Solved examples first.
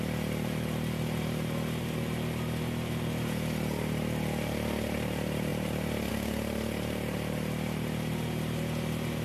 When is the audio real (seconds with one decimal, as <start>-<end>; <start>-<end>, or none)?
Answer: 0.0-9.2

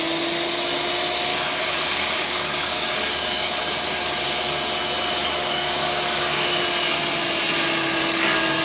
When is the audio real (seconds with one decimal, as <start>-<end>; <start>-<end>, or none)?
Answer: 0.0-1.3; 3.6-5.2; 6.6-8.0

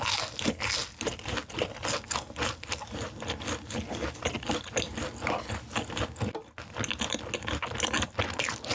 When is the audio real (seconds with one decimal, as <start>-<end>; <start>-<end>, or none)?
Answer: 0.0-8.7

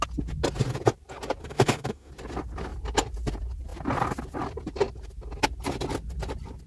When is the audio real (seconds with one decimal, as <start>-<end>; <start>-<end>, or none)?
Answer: 0.0-1.4; 2.1-6.7

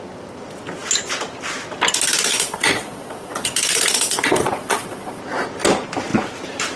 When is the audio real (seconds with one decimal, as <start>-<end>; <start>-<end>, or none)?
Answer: 0.0-2.3; 5.2-6.8

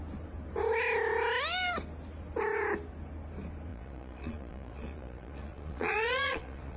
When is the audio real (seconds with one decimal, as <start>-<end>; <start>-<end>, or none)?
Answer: 0.0-3.7